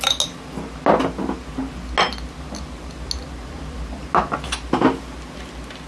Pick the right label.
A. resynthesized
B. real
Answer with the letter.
B